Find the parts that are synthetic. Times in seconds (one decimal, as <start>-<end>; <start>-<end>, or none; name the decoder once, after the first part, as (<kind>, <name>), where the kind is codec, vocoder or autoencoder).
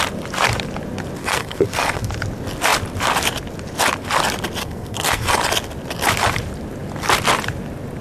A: 1.2-2.1 (codec, SNAC); 4.6-5.4